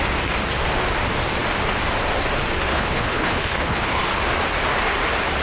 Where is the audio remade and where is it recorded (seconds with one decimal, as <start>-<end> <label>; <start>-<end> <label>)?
0.0-2.7 recorded; 2.7-4.0 remade; 4.0-5.4 recorded